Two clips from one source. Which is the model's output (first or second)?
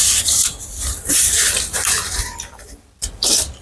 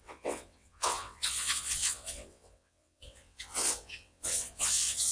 second